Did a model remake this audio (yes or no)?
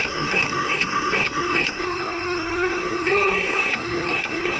yes